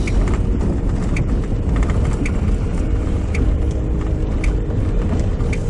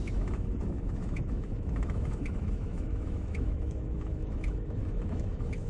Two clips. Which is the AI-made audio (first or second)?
second